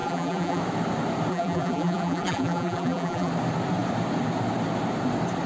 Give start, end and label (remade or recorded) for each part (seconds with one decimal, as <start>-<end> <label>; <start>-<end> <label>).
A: 0.0-0.6 remade; 0.6-1.3 recorded; 1.3-3.3 remade; 3.3-5.5 recorded